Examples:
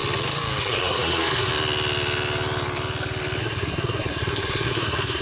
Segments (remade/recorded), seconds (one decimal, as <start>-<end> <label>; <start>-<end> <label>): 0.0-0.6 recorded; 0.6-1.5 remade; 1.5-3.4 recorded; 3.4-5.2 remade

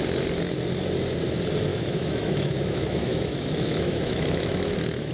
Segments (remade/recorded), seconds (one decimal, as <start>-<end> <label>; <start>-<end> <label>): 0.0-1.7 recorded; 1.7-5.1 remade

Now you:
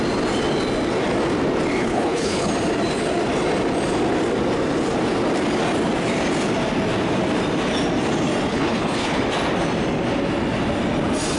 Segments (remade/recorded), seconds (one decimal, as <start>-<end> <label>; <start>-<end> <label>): 0.0-1.8 recorded; 1.8-2.5 remade; 2.5-8.5 recorded; 8.5-9.2 remade; 9.2-11.4 recorded